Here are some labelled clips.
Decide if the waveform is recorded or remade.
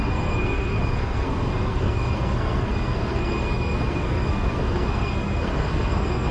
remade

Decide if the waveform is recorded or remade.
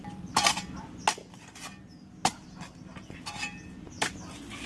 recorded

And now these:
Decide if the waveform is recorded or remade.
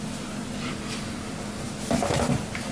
recorded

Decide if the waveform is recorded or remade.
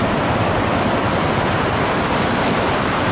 recorded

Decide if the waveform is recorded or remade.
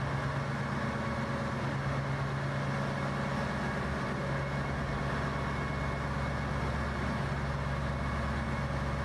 recorded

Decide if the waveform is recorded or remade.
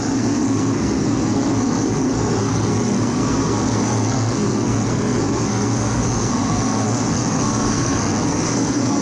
remade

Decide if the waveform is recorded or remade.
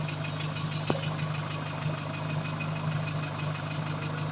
recorded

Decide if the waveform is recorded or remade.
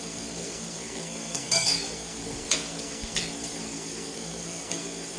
remade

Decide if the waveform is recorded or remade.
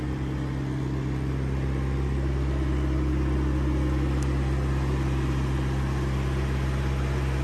recorded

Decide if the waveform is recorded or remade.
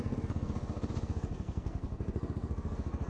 remade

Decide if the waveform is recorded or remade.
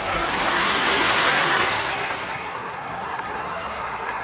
remade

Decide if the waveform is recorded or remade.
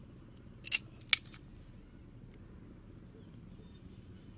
recorded